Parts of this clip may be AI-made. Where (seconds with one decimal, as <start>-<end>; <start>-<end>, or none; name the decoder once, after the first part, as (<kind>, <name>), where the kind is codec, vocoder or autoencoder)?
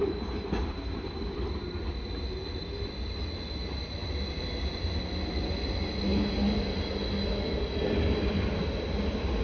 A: none